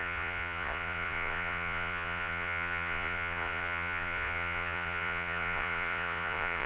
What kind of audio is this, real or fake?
fake